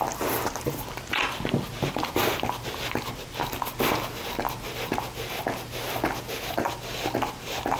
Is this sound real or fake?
real